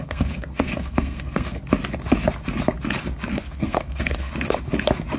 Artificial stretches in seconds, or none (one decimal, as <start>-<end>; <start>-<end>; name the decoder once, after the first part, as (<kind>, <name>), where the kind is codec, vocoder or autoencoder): 0.0-1.6 (codec, SNAC); 3.3-4.3